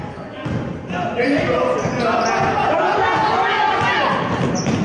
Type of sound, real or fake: real